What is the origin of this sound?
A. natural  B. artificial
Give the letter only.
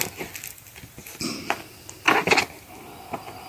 A